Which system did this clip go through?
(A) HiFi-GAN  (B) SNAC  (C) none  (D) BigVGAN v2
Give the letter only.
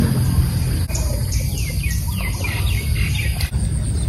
C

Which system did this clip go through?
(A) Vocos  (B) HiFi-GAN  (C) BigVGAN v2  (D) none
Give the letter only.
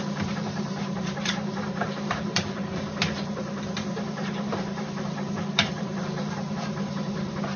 C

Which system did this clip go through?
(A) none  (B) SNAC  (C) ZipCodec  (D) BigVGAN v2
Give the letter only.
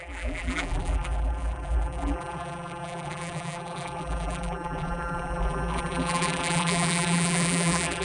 D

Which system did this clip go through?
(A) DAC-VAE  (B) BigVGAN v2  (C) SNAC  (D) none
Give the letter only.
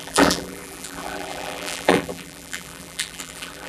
B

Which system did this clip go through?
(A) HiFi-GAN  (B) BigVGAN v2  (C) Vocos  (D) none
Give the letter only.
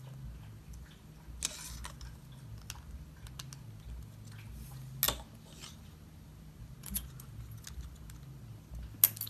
D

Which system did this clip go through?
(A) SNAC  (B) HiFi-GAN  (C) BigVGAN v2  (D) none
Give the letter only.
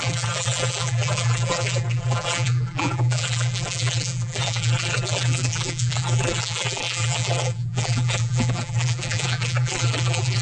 C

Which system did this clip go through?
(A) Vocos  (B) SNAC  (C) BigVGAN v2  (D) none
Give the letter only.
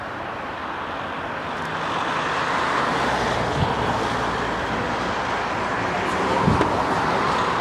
D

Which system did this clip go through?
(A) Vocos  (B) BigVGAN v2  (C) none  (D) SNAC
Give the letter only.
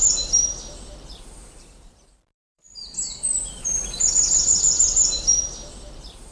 B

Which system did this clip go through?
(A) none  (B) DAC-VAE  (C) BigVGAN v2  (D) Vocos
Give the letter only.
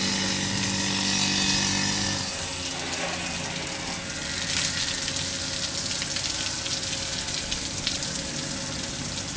A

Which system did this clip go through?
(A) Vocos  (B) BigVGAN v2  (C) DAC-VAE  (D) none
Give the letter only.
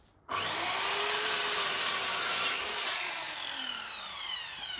B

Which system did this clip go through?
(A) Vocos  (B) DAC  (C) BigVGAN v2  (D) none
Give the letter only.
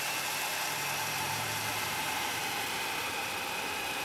C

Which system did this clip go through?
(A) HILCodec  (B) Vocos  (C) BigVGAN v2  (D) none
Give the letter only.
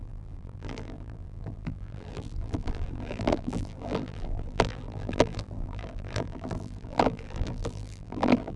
C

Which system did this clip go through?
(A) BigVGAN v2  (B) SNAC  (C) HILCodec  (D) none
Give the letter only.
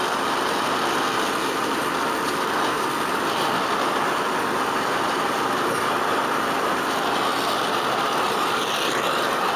A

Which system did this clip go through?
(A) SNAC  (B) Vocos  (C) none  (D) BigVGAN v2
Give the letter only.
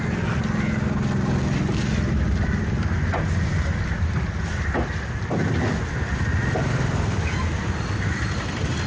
C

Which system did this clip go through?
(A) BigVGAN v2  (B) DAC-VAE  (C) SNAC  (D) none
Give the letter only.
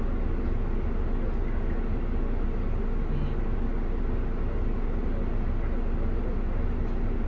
D